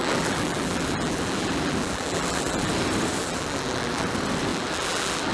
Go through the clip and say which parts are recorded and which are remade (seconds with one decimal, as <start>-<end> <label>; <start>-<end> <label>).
0.0-2.7 remade; 2.7-3.2 recorded; 3.2-4.1 remade; 4.1-4.5 recorded; 4.5-5.3 remade